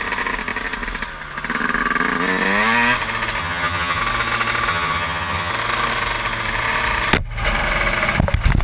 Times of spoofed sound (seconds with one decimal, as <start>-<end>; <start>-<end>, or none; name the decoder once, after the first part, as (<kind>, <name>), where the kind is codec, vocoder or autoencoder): 3.4-4.0 (vocoder, HiFi-GAN); 4.7-5.5